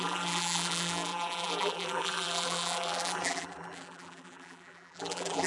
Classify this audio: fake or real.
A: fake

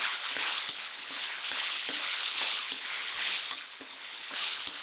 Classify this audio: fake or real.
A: fake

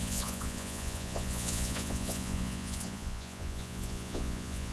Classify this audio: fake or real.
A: fake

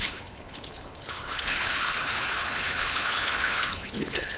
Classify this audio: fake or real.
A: fake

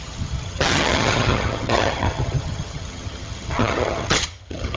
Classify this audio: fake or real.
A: fake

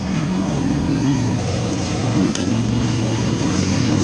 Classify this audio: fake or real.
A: fake